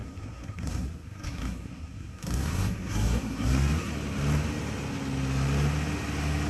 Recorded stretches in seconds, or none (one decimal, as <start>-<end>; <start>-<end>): 3.9-6.5